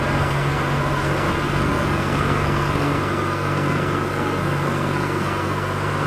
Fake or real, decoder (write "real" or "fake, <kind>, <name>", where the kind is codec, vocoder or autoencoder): fake, codec, SNAC